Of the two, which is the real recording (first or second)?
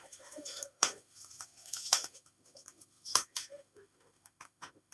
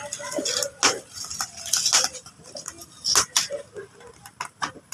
second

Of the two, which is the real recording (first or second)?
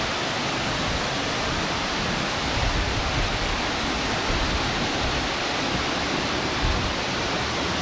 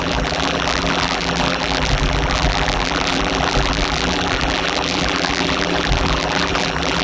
first